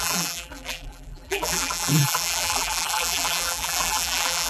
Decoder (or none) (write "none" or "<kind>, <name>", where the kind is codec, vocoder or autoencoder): vocoder, BigVGAN v2